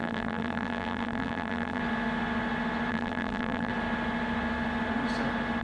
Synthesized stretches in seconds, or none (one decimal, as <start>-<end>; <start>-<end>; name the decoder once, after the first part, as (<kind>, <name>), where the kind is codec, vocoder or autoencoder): 0.0-1.8 (vocoder, BigVGAN v2); 2.9-3.7